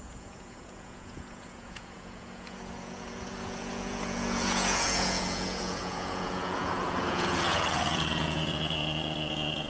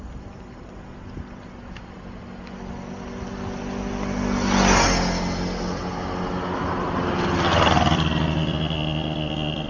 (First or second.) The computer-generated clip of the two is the first